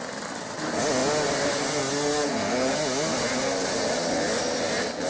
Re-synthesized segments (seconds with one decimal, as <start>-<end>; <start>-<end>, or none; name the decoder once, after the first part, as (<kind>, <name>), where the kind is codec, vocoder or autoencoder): none